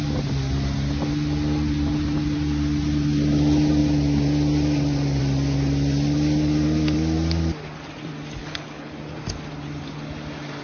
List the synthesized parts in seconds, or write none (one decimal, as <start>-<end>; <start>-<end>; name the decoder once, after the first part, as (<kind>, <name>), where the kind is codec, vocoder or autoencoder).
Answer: 8.4-8.9 (codec, HILCodec)